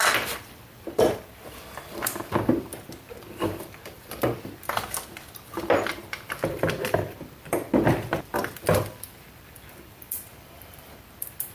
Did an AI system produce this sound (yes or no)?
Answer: yes